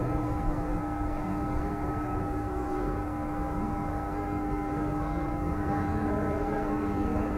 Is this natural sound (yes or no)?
no